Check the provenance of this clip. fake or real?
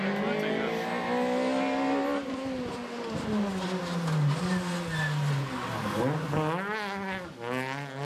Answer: real